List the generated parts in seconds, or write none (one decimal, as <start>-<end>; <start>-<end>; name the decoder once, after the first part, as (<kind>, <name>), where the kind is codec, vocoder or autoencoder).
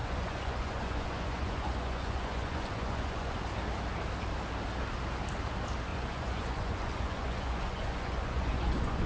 0.0-3.4 (vocoder, Vocos); 5.9-9.1